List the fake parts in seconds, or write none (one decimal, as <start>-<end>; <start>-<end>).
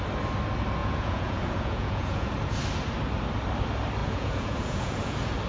0.8-2.3; 4.0-5.1